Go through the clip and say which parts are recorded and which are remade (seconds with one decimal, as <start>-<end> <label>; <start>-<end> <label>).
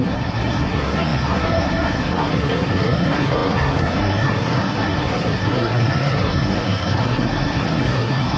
0.0-8.4 remade